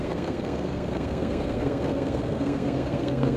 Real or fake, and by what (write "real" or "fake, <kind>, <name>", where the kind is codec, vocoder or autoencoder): fake, codec, SNAC